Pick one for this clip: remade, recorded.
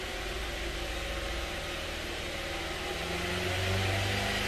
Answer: recorded